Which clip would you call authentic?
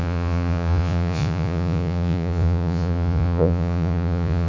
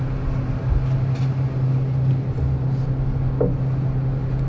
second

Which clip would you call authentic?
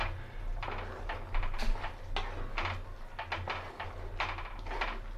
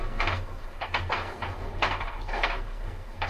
first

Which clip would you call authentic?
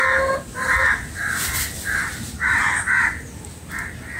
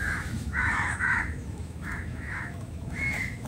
first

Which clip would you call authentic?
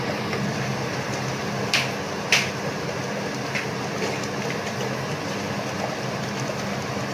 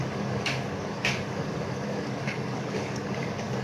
first